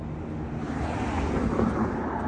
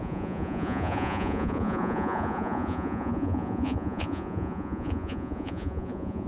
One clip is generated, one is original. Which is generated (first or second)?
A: second